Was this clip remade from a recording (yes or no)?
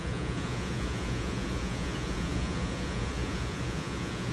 yes